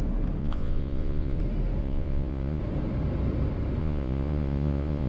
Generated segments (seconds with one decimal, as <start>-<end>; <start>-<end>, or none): 0.4-1.4; 1.8-2.6; 3.8-5.1